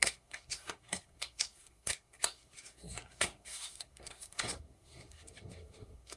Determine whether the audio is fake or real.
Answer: fake